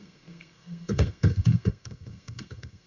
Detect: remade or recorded remade